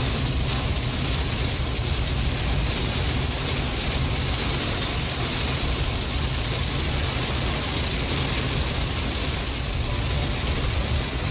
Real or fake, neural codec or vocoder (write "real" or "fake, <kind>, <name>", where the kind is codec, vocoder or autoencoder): real